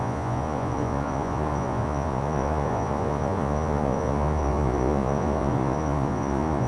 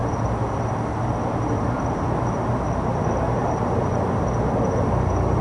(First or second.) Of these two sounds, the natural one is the second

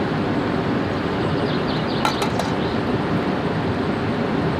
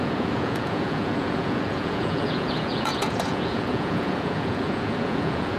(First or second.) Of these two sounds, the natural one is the first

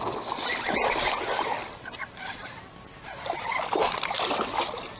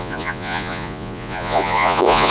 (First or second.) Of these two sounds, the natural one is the first